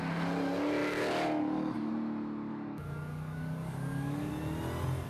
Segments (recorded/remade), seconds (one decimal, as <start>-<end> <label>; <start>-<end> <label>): 0.0-0.8 recorded; 0.8-1.9 remade; 1.9-2.5 recorded; 2.5-4.3 remade; 4.3-5.1 recorded